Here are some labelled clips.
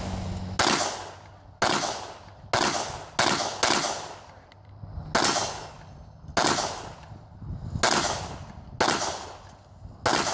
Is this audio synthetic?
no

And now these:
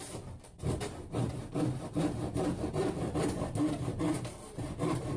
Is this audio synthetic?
yes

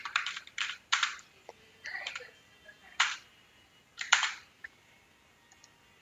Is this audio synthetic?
yes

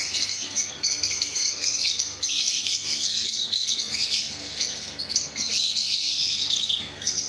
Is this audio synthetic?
yes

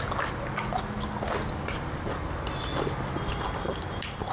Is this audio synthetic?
no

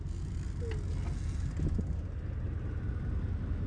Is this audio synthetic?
no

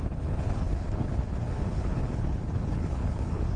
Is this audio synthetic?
yes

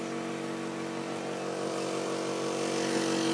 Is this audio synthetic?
no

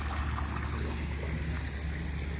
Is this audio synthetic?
no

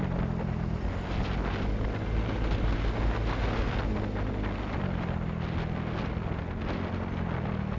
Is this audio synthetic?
no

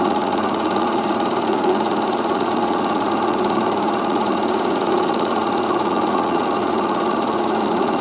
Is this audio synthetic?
yes